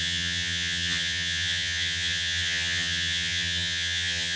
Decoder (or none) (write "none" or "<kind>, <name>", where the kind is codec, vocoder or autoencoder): vocoder, HiFi-GAN